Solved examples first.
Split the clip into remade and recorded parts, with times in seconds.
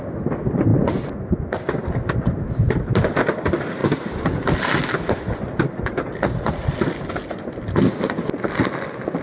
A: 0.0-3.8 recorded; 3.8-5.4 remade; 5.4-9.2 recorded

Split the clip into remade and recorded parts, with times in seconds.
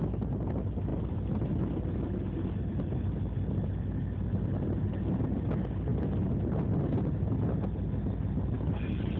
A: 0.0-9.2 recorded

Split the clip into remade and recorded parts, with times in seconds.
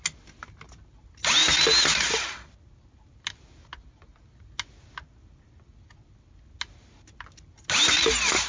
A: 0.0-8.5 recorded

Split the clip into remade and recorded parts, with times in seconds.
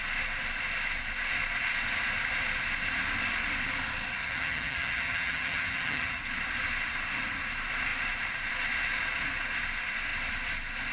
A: 0.0-4.2 recorded; 4.2-6.2 remade; 6.2-10.9 recorded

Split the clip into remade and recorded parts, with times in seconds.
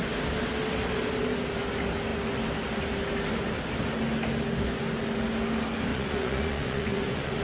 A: 0.0-5.9 recorded; 5.9-7.4 remade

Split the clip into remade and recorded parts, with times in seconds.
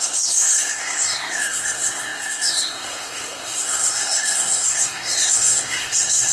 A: 0.0-6.3 remade